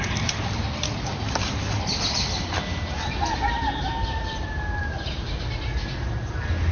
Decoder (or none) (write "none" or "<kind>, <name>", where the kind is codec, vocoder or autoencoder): none